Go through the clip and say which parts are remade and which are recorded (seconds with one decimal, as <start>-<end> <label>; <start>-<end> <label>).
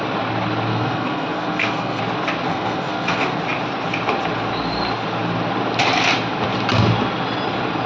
0.0-0.7 recorded; 0.7-2.0 remade; 2.0-2.5 recorded; 2.5-3.4 remade; 3.4-7.9 recorded